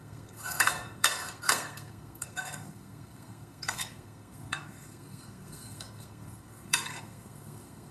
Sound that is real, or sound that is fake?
fake